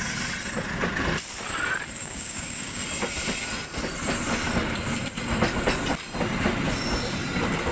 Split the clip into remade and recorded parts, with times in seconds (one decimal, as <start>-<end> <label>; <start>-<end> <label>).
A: 0.0-2.0 recorded; 2.0-2.8 remade; 2.8-7.7 recorded

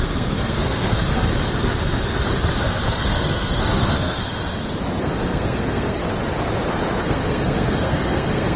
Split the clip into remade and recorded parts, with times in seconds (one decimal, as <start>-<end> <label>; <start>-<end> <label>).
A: 0.0-1.3 remade; 1.3-2.6 recorded; 2.6-4.2 remade; 4.2-5.0 recorded; 5.0-6.0 remade; 6.0-7.0 recorded; 7.0-8.6 remade

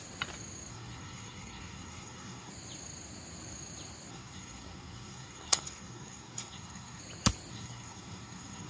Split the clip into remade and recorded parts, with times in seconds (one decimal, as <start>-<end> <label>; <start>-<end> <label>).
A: 0.0-0.7 recorded; 0.7-2.5 remade; 2.5-4.1 recorded; 4.1-7.0 remade; 7.0-7.5 recorded; 7.5-8.7 remade